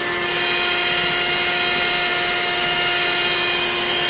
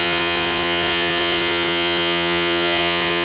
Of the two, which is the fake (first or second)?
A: second